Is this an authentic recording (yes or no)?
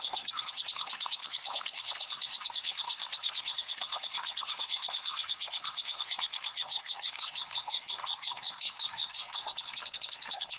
no